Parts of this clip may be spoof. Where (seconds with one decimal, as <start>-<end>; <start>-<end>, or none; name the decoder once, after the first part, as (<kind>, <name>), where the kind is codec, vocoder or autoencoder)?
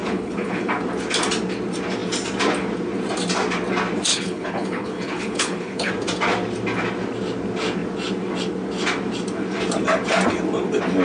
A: 0.0-0.7 (codec, HILCodec); 4.1-5.9